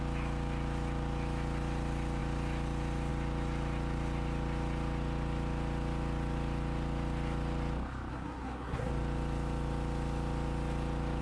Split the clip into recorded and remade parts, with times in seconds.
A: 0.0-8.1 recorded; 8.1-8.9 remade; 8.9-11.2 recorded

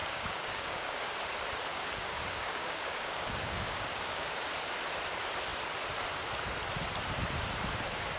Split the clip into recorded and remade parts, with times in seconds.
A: 0.0-1.1 remade; 1.1-1.7 recorded; 1.7-4.3 remade; 4.3-8.2 recorded

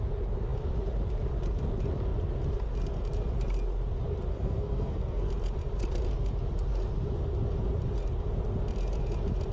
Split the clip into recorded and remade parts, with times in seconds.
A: 0.0-4.3 recorded; 4.3-5.3 remade; 5.3-9.5 recorded

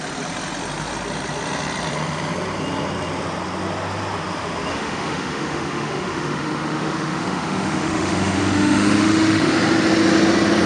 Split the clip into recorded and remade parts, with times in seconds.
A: 0.0-4.7 recorded; 4.7-9.5 remade; 9.5-10.7 recorded